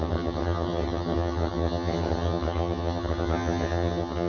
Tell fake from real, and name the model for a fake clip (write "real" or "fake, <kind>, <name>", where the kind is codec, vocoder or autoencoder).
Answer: fake, vocoder, HiFi-GAN